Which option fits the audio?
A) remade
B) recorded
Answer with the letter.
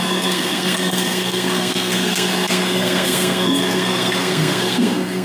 A